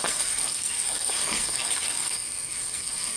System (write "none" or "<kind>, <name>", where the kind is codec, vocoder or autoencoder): codec, SNAC